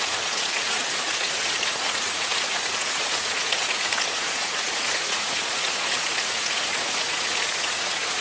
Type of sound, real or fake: fake